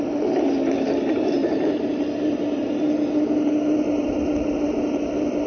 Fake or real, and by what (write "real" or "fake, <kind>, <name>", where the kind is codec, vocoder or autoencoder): real